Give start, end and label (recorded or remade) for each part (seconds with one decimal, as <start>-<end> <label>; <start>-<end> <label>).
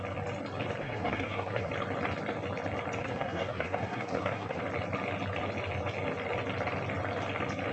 0.0-0.8 recorded; 0.8-1.7 remade; 1.7-3.0 recorded; 3.0-4.6 remade; 4.6-7.7 recorded